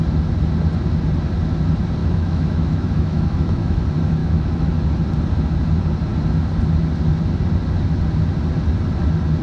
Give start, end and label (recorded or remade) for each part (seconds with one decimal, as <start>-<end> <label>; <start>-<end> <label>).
0.0-2.0 recorded; 2.0-3.8 remade; 3.8-4.2 recorded; 4.2-4.7 remade; 4.7-9.4 recorded

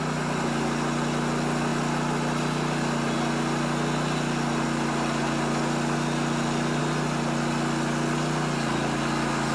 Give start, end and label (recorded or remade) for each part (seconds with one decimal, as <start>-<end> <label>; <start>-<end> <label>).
0.0-9.5 recorded

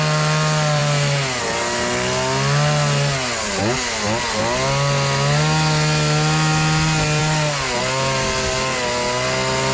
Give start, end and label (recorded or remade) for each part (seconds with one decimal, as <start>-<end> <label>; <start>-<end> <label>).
0.0-9.7 recorded

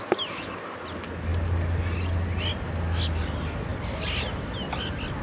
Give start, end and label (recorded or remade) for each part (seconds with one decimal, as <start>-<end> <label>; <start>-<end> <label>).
0.0-5.2 recorded

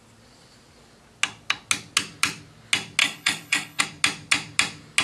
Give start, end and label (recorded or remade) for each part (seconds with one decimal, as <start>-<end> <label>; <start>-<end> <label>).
0.0-3.0 recorded; 3.0-3.8 remade; 3.8-5.0 recorded

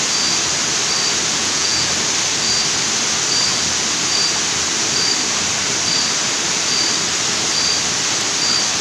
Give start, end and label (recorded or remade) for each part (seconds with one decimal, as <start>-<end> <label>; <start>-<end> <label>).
0.0-1.4 recorded; 1.4-1.9 remade; 1.9-8.8 recorded

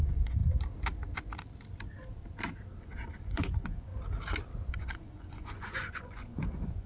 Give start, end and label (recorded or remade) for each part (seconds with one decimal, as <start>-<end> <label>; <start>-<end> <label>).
0.0-0.4 remade; 0.4-2.8 recorded; 2.8-3.9 remade; 3.9-4.7 recorded; 4.7-6.9 remade

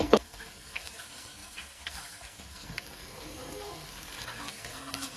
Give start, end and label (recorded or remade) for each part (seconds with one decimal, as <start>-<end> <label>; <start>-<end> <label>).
0.0-5.2 remade